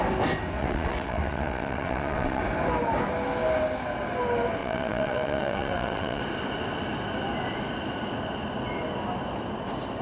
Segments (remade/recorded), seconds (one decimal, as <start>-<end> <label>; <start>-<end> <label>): 0.0-0.6 recorded; 0.6-2.4 remade; 2.4-4.6 recorded; 4.6-6.2 remade; 6.2-10.0 recorded